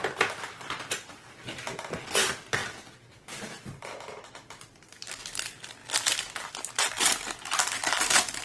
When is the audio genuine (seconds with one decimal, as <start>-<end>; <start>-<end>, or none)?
0.0-8.4